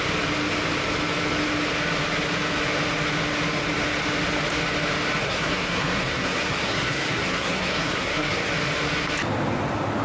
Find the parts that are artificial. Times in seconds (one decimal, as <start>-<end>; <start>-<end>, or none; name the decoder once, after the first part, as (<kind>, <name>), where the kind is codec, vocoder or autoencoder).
5.2-8.5 (codec, SNAC)